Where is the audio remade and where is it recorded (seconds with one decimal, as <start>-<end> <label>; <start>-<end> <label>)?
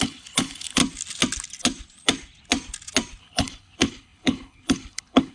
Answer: 0.0-0.8 remade; 0.8-3.2 recorded; 3.2-5.3 remade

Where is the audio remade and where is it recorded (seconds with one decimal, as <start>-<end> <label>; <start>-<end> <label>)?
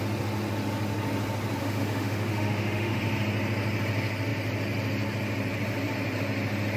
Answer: 0.0-1.6 recorded; 1.6-3.0 remade; 3.0-6.8 recorded